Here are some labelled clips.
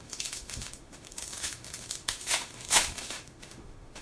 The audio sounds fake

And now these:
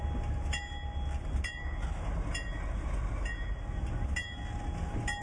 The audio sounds real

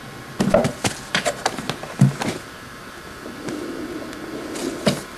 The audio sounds real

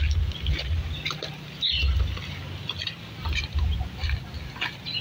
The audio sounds real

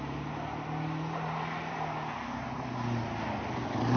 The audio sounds real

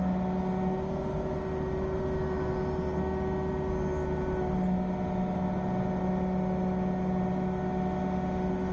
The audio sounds real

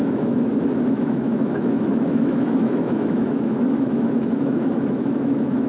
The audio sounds fake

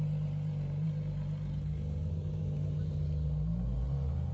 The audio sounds real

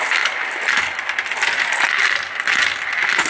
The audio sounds real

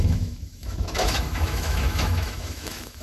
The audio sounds fake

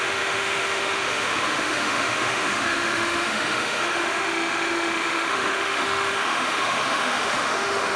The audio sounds fake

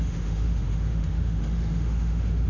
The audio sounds fake